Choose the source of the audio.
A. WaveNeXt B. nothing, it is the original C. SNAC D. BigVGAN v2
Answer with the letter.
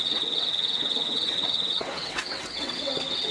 A